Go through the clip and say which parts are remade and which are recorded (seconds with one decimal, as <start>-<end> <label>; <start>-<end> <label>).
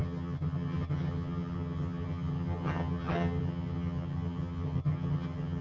0.0-5.6 remade